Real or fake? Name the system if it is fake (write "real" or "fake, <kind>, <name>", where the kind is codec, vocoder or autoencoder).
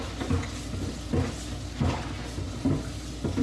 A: real